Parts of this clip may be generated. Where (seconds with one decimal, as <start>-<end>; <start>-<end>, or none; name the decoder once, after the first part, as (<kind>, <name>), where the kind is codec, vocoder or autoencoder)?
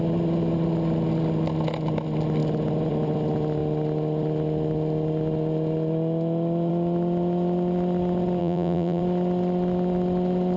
8.4-9.0 (vocoder, BigVGAN v2)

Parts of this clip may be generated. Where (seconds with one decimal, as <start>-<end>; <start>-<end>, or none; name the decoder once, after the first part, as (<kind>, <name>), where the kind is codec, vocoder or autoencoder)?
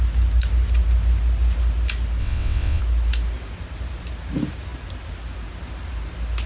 2.2-2.8 (vocoder, WaveNeXt)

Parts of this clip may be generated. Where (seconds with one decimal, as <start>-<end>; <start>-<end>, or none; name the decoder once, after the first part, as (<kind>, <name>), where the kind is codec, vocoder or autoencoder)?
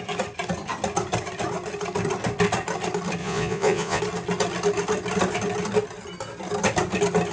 3.2-4.0 (vocoder, Vocos)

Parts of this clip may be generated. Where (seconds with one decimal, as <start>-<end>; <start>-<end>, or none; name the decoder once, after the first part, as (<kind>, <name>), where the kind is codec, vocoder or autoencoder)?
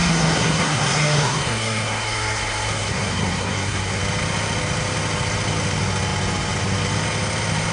0.0-4.0 (codec, SNAC)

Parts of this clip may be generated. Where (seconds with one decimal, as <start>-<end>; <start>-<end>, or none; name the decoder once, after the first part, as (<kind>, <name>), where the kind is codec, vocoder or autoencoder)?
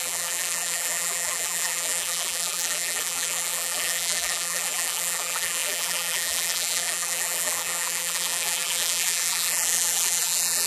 0.0-10.7 (vocoder, BigVGAN v2)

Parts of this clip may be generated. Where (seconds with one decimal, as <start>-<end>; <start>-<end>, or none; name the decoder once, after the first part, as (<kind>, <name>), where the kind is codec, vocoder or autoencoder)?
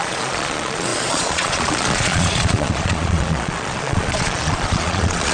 0.0-5.3 (vocoder, Vocos)